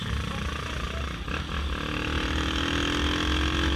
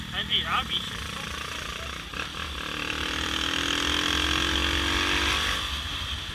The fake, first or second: second